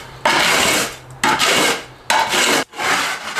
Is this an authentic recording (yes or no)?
yes